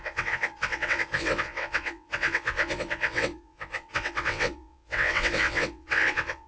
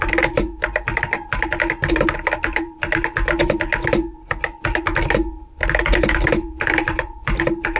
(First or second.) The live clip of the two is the second